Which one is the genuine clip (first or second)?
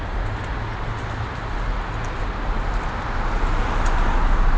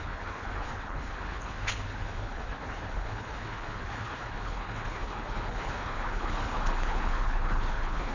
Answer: first